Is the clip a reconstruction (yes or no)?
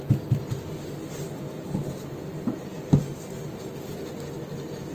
no